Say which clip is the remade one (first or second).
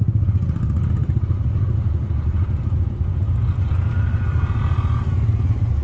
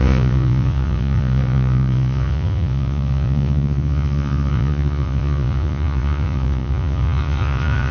second